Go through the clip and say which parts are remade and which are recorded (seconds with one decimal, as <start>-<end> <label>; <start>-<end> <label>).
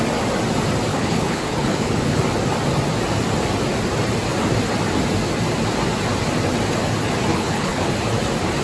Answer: 0.0-0.9 recorded; 0.9-2.2 remade; 2.2-7.3 recorded; 7.3-7.9 remade; 7.9-8.6 recorded